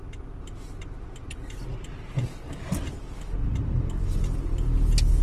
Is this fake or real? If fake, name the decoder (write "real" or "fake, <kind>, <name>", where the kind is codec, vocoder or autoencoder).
real